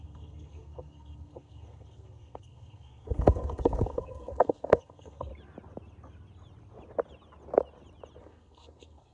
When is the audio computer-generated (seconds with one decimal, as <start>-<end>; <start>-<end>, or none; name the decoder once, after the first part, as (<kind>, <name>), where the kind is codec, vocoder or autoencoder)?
0.0-5.3 (codec, SNAC); 8.2-9.1